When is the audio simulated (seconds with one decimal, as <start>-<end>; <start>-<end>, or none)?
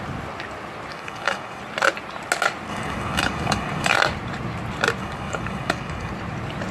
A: 0.9-1.6; 2.7-3.9; 5.0-6.1